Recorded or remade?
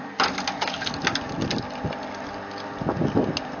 recorded